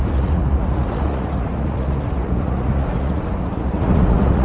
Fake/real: fake